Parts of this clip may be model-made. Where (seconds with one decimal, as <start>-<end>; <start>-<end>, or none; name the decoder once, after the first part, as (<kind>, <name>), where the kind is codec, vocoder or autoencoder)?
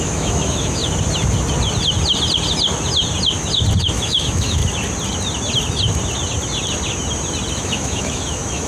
0.0-0.8 (autoencoder, DAC-VAE); 3.8-4.6; 7.5-8.7